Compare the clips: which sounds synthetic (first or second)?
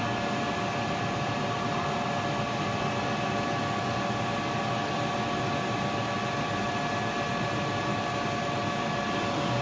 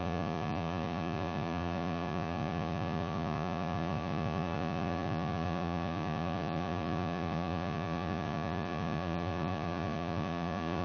second